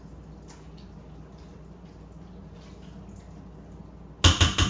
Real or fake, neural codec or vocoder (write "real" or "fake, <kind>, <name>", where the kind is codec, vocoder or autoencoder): real